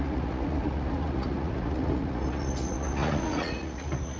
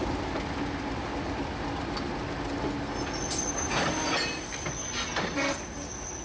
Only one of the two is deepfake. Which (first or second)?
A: first